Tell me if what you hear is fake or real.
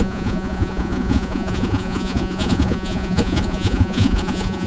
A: fake